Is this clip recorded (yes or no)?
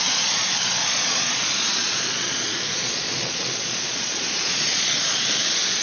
no